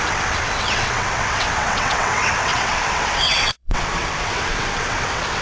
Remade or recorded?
remade